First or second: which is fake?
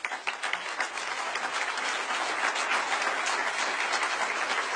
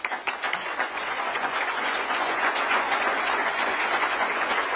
second